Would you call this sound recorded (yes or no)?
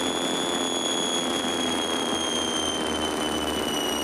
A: yes